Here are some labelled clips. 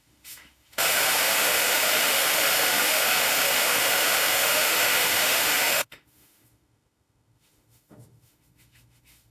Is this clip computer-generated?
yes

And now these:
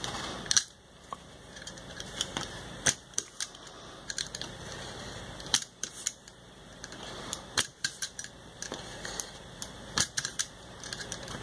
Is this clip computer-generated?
yes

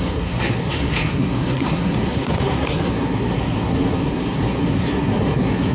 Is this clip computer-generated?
yes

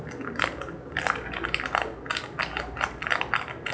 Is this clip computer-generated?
no